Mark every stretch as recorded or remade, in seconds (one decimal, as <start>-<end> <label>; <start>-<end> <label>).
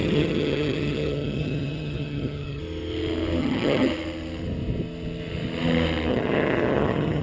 0.0-2.6 remade; 2.6-3.4 recorded; 3.4-3.9 remade; 3.9-6.1 recorded; 6.1-7.2 remade